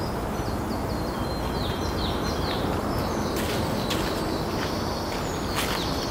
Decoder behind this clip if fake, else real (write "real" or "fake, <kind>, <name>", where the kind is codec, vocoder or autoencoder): real